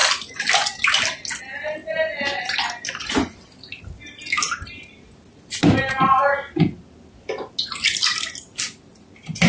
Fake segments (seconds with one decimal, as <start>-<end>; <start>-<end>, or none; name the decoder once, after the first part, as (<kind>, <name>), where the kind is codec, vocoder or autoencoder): none